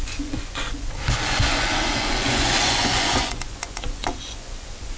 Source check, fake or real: fake